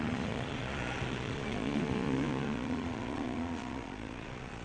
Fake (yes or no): yes